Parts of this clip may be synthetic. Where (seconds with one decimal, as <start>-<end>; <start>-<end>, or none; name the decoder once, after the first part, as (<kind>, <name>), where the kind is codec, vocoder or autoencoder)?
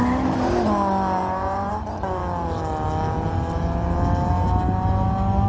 1.2-1.7 (vocoder, Vocos)